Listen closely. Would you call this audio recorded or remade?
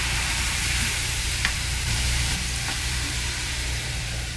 remade